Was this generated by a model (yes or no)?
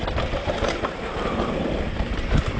yes